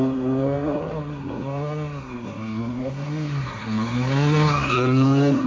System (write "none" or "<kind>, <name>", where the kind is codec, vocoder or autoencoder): codec, SNAC